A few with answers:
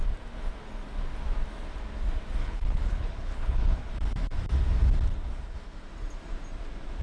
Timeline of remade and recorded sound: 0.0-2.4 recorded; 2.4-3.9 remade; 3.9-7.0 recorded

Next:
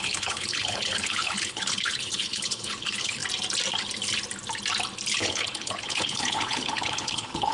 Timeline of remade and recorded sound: 0.0-3.2 remade; 3.2-5.1 recorded; 5.1-7.5 remade